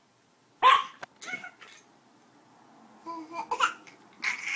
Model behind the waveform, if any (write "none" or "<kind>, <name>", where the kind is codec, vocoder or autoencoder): none